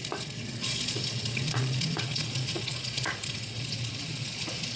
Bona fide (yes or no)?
no